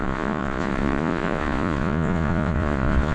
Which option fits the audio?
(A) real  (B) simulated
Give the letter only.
B